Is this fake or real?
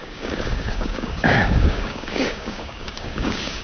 fake